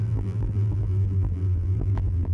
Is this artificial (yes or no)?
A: yes